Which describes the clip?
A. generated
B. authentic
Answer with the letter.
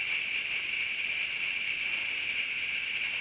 B